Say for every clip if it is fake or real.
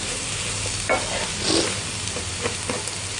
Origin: real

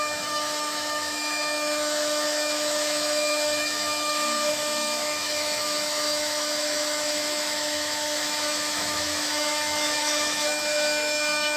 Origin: fake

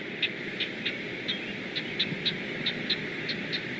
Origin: real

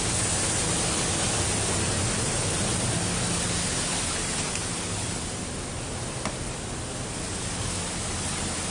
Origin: real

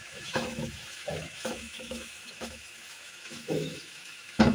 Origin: fake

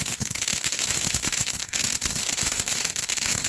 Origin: fake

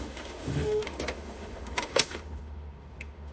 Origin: fake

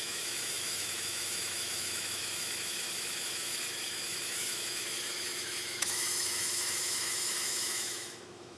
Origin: fake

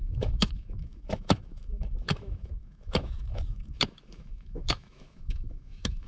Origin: fake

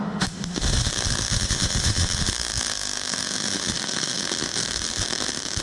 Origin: fake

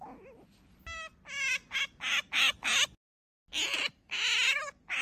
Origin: real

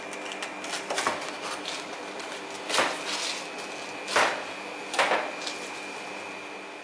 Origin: real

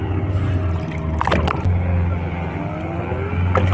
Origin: real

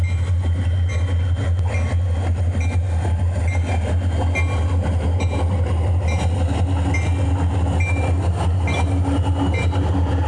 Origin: real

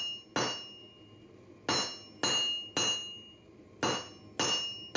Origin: real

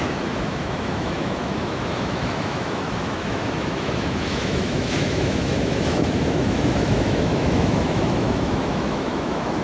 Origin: fake